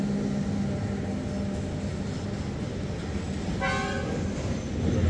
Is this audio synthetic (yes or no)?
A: no